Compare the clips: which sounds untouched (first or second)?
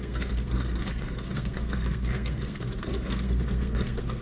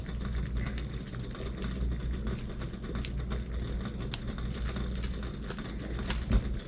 second